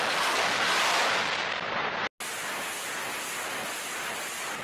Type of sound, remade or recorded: recorded